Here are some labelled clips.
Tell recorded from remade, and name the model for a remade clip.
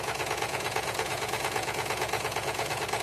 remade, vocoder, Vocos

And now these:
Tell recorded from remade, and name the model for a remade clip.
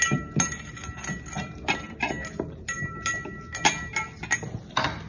recorded